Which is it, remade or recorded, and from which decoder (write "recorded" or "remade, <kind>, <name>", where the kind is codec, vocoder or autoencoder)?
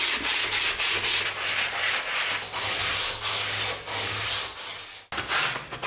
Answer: recorded